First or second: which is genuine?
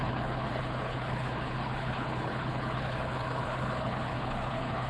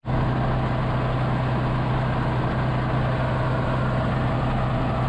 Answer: second